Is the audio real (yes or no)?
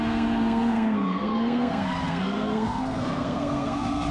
no